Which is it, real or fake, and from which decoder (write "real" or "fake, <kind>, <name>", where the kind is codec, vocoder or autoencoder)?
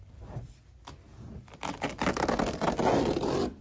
real